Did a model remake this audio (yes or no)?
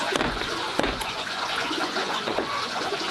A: yes